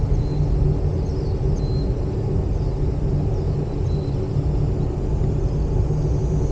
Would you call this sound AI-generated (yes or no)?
no